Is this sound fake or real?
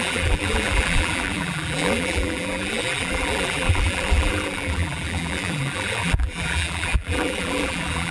fake